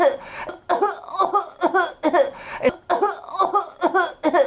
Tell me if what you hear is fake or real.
real